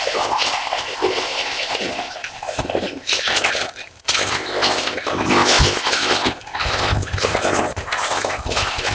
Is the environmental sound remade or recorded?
remade